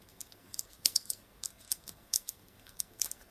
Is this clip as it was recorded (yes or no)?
no